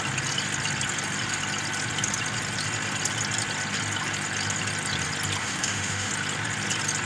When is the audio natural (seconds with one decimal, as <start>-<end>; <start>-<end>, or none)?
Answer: 0.0-5.4; 6.1-7.1